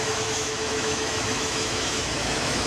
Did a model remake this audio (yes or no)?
yes